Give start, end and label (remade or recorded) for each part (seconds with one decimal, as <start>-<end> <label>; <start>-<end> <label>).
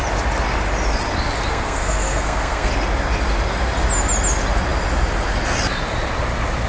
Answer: 0.0-1.5 recorded; 1.5-2.7 remade; 2.7-6.7 recorded